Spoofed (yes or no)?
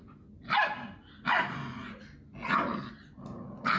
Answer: no